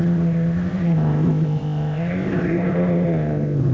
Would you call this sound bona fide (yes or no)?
no